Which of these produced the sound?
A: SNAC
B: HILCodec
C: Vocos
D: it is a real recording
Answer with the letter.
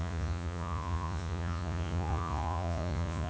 C